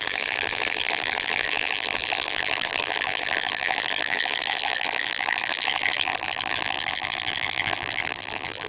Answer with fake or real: fake